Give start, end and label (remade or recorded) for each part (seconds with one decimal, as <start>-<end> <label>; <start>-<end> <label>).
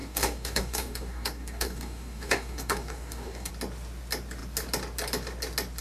0.0-3.5 remade; 3.5-5.8 recorded